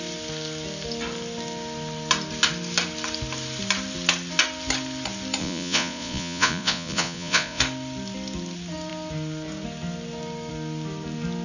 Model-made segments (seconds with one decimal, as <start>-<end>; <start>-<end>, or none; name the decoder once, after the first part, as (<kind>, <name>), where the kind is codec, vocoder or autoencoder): 5.4-7.6 (vocoder, Vocos)